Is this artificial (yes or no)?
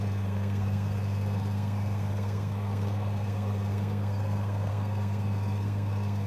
yes